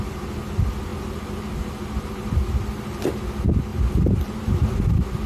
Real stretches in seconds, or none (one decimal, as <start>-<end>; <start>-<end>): 0.0-3.7; 4.8-5.3